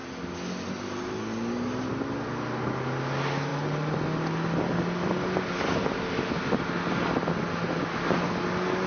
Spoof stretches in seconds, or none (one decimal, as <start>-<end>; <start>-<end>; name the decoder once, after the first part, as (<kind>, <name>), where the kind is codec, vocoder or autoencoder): none